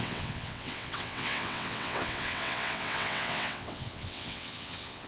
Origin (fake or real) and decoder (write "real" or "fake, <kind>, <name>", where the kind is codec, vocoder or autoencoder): fake, vocoder, WaveNeXt